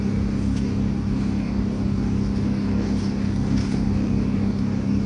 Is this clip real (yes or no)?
no